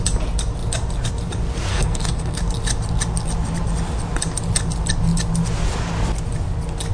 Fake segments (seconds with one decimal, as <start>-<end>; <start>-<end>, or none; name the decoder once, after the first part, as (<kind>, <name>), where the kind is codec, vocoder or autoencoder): 1.7-2.4 (codec, SNAC)